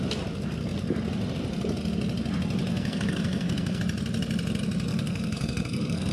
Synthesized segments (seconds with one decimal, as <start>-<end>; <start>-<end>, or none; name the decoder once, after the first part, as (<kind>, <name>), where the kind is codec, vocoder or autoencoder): 2.7-3.8 (codec, SNAC); 4.9-6.1